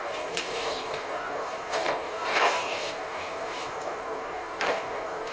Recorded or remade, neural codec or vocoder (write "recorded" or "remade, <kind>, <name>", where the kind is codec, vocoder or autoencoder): remade, codec, DAC